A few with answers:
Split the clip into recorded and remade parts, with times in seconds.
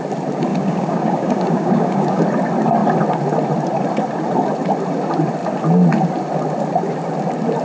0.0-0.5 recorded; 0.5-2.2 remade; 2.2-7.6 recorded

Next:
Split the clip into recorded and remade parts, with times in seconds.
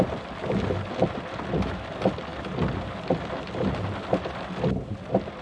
0.0-5.4 recorded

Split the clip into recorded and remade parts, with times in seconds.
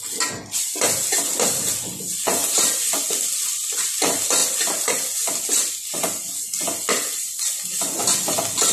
0.0-8.7 recorded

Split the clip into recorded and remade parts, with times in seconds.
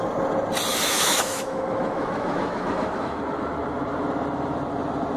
0.0-0.7 recorded; 0.7-3.2 remade; 3.2-5.2 recorded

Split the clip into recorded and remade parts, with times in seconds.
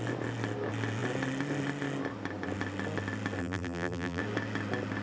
0.0-3.4 recorded; 3.4-4.2 remade; 4.2-5.0 recorded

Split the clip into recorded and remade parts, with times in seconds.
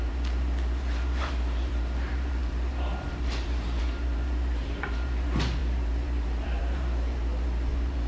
0.0-8.1 remade